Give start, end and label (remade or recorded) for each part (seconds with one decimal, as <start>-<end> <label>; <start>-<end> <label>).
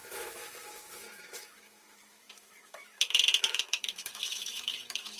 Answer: 0.0-5.2 remade